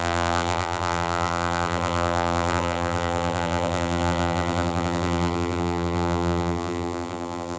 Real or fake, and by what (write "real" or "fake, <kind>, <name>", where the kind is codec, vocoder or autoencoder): fake, vocoder, BigVGAN v2